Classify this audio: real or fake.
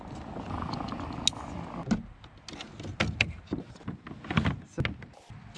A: real